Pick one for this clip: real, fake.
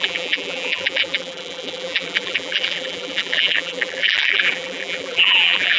fake